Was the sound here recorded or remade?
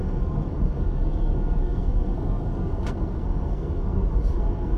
remade